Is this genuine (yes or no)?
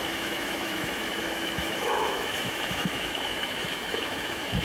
no